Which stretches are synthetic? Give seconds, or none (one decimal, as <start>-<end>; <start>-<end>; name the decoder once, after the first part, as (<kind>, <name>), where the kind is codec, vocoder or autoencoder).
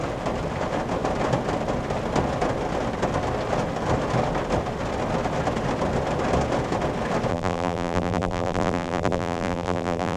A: 7.3-10.2 (vocoder, BigVGAN v2)